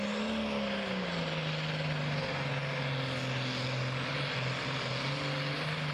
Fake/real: real